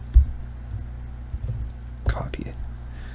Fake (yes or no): no